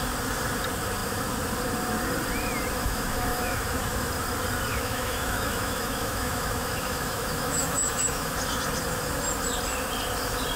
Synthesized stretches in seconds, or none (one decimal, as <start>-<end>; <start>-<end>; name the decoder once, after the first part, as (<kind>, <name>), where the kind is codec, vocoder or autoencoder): 2.8-4.1 (autoencoder, DAC-VAE); 4.7-8.3